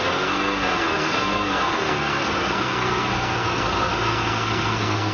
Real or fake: fake